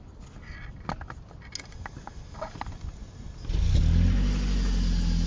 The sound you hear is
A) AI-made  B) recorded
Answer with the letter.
B